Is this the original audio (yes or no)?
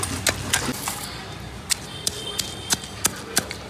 yes